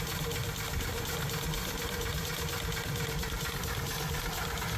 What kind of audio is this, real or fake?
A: real